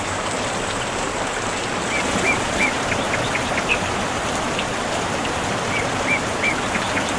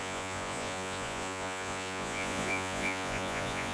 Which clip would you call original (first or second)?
first